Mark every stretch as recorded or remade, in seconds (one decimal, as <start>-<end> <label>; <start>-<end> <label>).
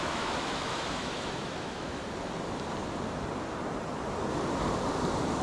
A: 0.0-2.0 remade; 2.0-5.4 recorded